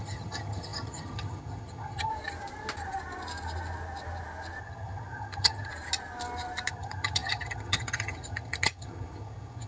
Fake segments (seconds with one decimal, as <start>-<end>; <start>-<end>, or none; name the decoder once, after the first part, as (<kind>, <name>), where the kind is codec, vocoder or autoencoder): 0.0-2.1 (vocoder, HiFi-GAN); 4.6-5.7; 6.7-9.7